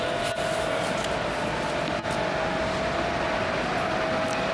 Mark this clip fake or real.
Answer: real